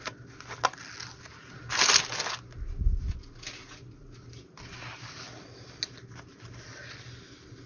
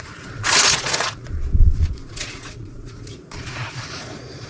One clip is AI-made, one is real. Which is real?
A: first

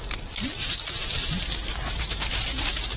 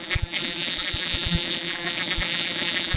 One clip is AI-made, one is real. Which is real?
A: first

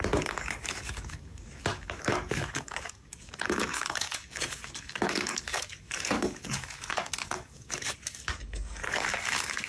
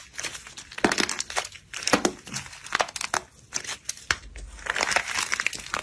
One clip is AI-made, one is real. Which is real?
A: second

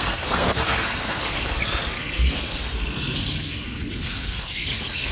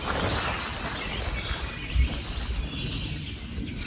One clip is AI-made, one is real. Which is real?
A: second